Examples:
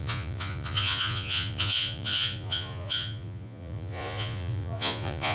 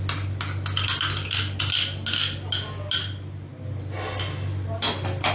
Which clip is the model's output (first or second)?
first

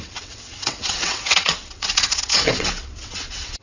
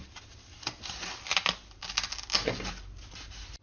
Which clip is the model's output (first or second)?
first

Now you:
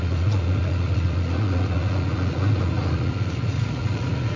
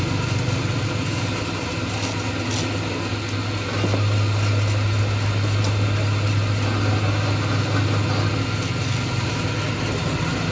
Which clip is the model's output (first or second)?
first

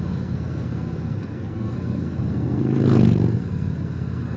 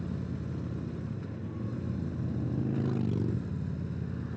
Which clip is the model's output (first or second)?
first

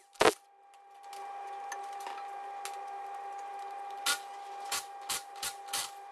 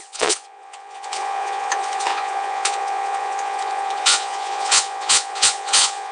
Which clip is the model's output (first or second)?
second